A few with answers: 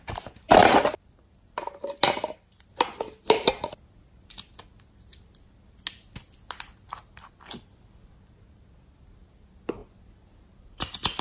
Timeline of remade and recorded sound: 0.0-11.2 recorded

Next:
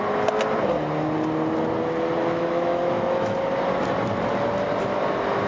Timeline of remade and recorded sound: 0.0-2.2 recorded; 2.2-3.4 remade; 3.4-5.5 recorded

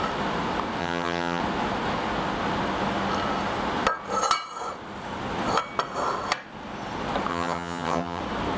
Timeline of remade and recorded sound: 0.0-0.8 recorded; 0.8-1.4 remade; 1.4-7.3 recorded; 7.3-8.2 remade; 8.2-8.6 recorded

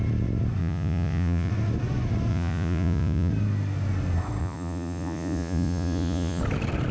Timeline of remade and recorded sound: 0.0-0.6 recorded; 0.6-1.5 remade; 1.5-2.3 recorded; 2.3-3.3 remade; 3.3-4.4 recorded; 4.4-6.4 remade; 6.4-6.9 recorded

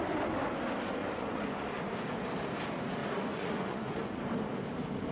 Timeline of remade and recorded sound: 0.0-1.0 recorded; 1.0-1.8 remade; 1.8-3.0 recorded; 3.0-4.2 remade; 4.2-5.1 recorded